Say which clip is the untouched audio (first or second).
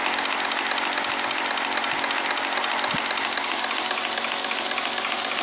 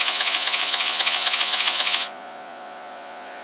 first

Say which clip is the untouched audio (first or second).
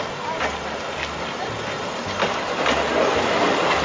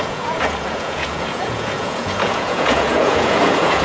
first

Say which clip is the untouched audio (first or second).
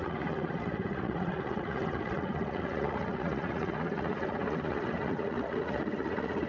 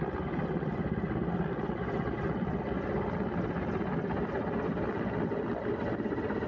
second